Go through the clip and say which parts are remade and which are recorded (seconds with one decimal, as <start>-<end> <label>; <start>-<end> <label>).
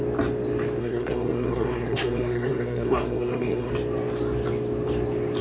0.0-0.8 recorded; 0.8-3.7 remade; 3.7-5.4 recorded